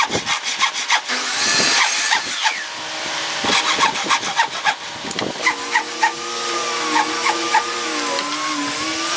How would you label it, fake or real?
real